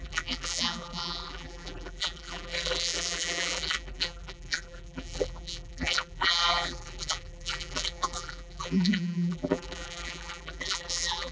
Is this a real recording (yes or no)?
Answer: no